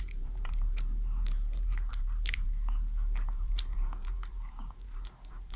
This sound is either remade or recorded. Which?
remade